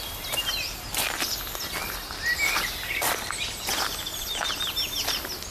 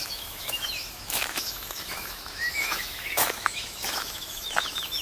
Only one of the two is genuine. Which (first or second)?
first